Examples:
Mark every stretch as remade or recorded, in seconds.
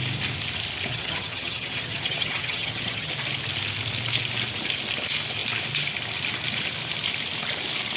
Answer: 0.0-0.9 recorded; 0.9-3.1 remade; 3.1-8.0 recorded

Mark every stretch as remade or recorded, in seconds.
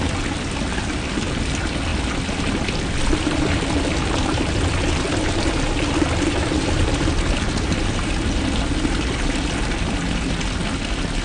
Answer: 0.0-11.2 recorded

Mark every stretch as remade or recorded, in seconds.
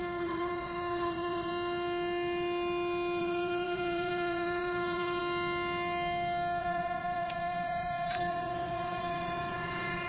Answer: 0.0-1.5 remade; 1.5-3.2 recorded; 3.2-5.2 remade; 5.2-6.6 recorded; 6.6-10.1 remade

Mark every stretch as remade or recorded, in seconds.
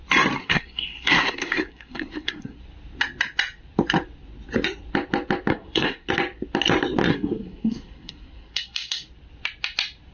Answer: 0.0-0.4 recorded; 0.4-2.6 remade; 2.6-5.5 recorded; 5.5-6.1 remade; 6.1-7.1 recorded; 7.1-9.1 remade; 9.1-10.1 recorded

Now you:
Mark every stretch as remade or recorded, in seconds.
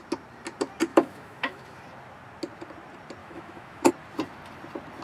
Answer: 0.0-0.9 recorded; 0.9-1.8 remade; 1.8-3.2 recorded; 3.2-3.9 remade; 3.9-5.0 recorded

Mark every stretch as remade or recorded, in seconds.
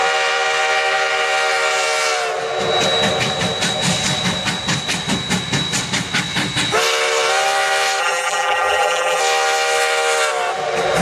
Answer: 0.0-8.0 recorded; 8.0-9.2 remade; 9.2-11.0 recorded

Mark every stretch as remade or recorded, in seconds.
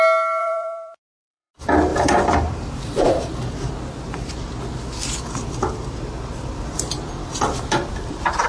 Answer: 0.0-0.4 recorded; 0.4-1.5 remade; 1.5-1.9 recorded; 1.9-3.3 remade; 3.3-8.5 recorded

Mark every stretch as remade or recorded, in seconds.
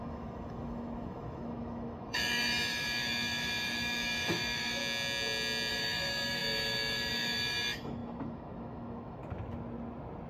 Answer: 0.0-4.8 remade; 4.8-5.7 recorded; 5.7-9.2 remade; 9.2-10.3 recorded